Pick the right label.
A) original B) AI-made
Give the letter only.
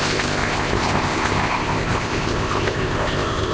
B